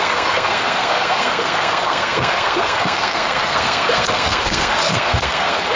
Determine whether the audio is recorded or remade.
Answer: remade